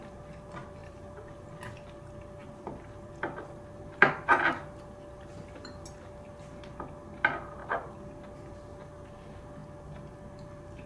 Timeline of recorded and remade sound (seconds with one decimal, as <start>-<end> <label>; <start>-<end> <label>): 0.0-0.8 recorded; 0.8-1.5 remade; 1.5-2.4 recorded; 2.4-3.1 remade; 3.1-7.6 recorded; 7.6-8.6 remade; 8.6-10.9 recorded